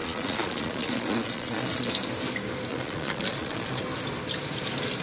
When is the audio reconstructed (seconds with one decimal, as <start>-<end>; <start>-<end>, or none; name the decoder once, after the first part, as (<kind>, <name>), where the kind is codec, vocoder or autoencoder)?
0.0-1.9 (vocoder, Vocos); 2.7-3.8